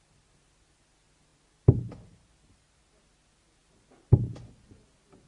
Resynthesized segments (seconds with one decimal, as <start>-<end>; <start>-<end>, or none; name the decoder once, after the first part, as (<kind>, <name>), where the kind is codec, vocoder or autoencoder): none